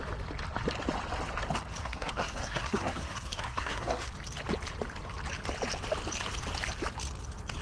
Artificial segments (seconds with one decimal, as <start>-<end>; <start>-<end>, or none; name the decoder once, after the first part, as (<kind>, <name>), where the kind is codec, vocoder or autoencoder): 1.8-4.1 (codec, SNAC)